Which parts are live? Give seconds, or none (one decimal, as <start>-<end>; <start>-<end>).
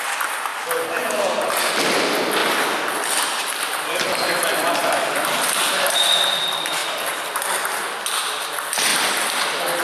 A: 0.0-2.4; 5.9-6.8; 7.3-8.9